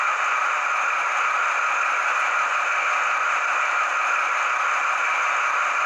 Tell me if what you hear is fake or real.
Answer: real